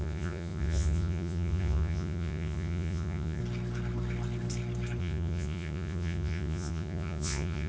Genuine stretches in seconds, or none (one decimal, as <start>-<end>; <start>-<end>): 3.4-5.0